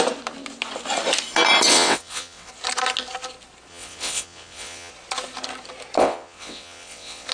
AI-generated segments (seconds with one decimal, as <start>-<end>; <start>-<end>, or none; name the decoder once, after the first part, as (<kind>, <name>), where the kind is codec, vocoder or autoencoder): 1.7-2.5 (vocoder, WaveNeXt); 3.7-4.9; 6.0-7.3